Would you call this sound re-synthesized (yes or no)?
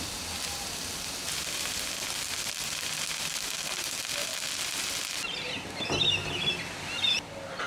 no